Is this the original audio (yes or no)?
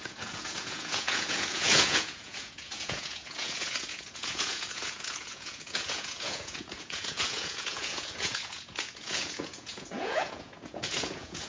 no